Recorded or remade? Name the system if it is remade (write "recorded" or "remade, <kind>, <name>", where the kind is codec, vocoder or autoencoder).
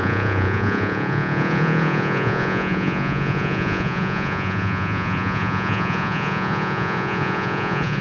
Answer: remade, vocoder, Vocos